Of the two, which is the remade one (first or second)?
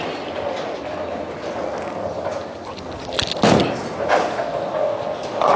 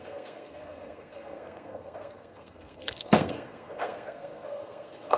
second